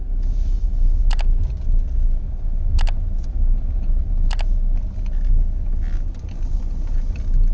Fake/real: real